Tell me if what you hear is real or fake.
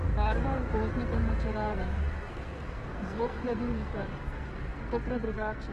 fake